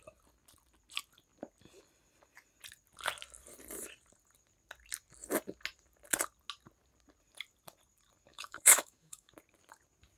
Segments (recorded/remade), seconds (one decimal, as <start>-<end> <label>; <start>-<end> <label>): 0.0-8.3 recorded; 8.3-9.3 remade; 9.3-10.2 recorded